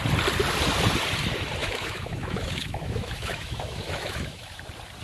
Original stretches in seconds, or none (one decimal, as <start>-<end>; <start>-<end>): 0.0-1.6; 4.6-5.0